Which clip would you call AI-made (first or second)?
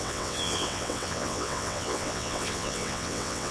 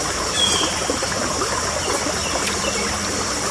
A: first